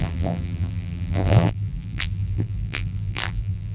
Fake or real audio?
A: fake